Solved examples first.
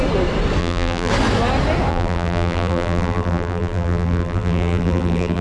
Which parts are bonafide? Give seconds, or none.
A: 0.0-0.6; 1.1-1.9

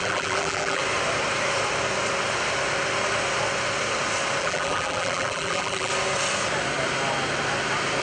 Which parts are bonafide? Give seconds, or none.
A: 0.8-4.4; 5.9-8.0

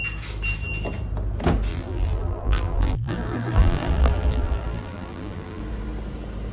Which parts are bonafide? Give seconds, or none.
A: 0.0-1.7; 5.6-6.5

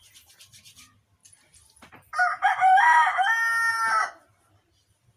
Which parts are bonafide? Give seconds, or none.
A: 0.0-5.2

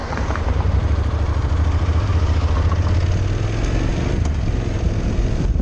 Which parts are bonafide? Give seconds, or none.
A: 2.1-3.9

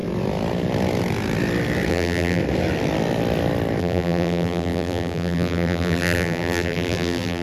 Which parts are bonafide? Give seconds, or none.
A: 0.0-1.9; 2.4-3.8